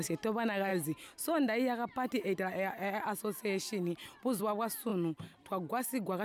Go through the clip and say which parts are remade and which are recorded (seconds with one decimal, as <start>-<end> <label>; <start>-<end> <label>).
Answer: 0.0-6.2 recorded